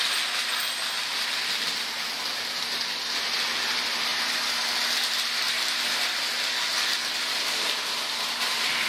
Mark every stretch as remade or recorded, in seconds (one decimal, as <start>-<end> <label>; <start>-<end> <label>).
0.0-8.9 recorded